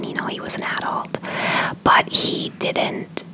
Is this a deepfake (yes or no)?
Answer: no